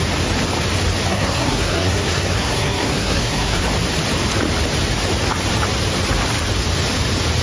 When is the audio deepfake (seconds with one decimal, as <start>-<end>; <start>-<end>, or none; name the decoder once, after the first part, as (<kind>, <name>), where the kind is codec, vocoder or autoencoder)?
1.1-3.6 (codec, SNAC)